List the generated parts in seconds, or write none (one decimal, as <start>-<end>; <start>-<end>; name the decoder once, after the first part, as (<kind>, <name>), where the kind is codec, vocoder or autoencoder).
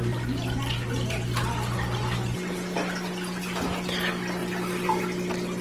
none